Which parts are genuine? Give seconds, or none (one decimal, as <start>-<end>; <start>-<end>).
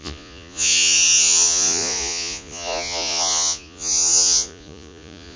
none